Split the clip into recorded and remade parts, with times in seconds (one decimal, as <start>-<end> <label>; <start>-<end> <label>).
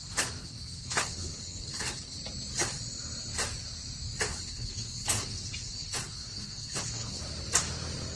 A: 0.0-0.4 recorded; 0.4-2.2 remade; 2.2-4.3 recorded; 4.3-7.2 remade; 7.2-8.2 recorded